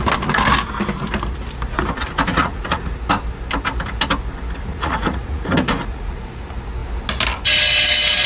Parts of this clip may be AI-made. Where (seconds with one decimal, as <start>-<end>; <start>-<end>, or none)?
2.3-3.0; 4.7-6.2